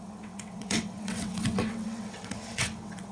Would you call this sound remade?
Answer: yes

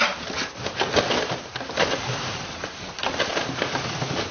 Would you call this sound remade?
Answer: no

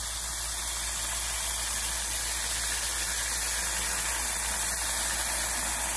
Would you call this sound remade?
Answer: no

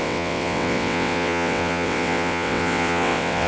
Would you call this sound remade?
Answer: yes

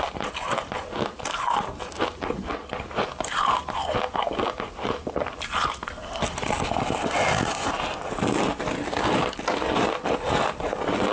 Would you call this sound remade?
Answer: no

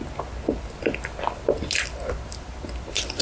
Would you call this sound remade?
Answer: no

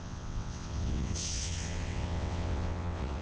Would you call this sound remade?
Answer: yes